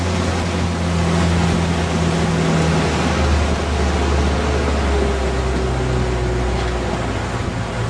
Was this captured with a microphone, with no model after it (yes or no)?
yes